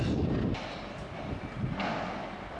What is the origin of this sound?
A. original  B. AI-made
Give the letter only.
A